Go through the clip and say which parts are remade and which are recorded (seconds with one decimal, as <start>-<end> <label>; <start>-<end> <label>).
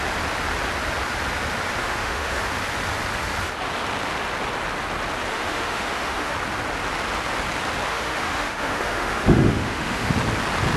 0.0-1.8 recorded; 1.8-2.5 remade; 2.5-5.3 recorded; 5.3-6.3 remade; 6.3-7.9 recorded; 7.9-10.1 remade; 10.1-10.8 recorded